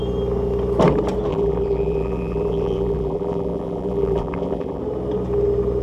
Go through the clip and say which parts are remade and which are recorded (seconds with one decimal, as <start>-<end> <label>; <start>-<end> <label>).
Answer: 0.0-1.3 recorded; 1.3-4.8 remade; 4.8-5.8 recorded